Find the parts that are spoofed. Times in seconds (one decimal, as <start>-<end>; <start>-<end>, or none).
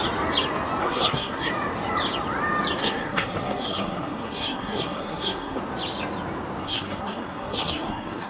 0.8-1.5; 2.8-5.6; 6.6-8.3